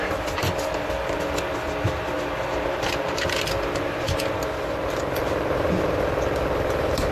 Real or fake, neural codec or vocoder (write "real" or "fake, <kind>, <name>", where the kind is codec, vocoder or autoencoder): fake, vocoder, BigVGAN v2